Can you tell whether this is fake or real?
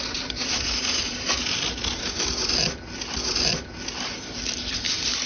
real